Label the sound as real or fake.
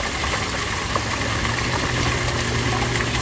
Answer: real